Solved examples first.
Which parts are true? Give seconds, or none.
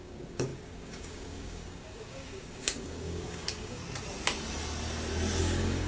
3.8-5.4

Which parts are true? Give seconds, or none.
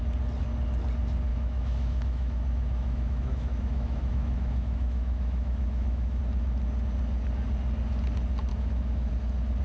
0.0-1.3; 6.2-8.5; 9.1-9.6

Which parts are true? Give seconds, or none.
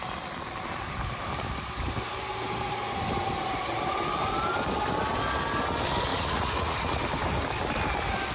0.0-6.1; 7.0-8.3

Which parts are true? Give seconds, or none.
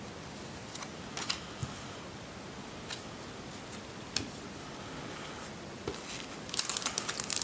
0.0-7.4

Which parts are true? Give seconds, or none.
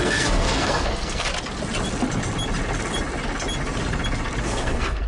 1.3-4.4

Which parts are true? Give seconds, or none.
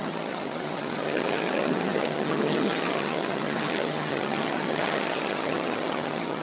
none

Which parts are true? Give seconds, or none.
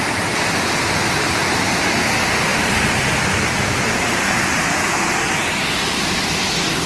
0.0-6.9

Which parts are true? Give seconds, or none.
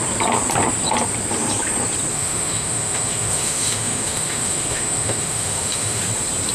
0.0-2.1; 6.0-6.5